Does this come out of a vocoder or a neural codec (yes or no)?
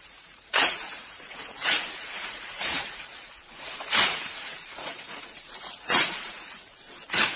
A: yes